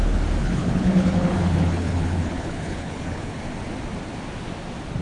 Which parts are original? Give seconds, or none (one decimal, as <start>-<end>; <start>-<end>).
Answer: 0.0-0.4; 3.4-5.0